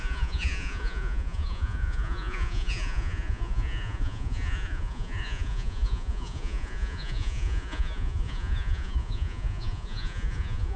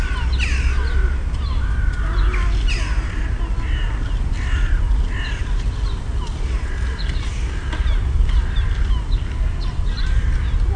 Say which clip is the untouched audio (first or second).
second